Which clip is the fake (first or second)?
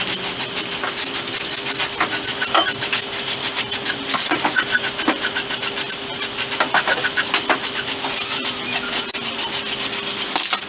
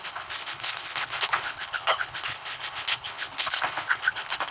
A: second